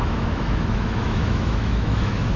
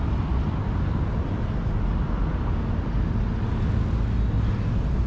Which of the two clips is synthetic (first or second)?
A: first